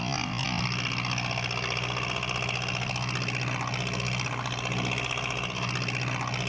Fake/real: real